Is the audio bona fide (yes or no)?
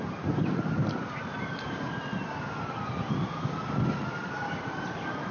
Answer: yes